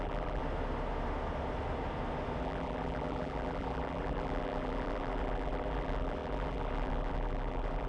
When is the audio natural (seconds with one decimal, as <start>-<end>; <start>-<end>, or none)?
0.4-2.4